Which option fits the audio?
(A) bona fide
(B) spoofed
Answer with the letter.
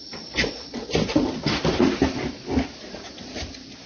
A